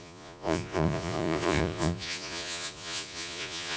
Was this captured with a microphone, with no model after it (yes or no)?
no